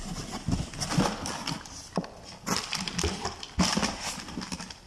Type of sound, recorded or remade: recorded